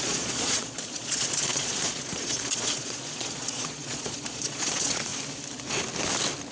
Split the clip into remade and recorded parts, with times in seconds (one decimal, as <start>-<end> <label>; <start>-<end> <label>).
0.0-5.1 remade; 5.1-6.5 recorded